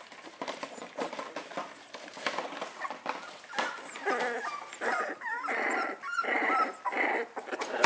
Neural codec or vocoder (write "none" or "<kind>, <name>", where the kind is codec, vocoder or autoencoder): none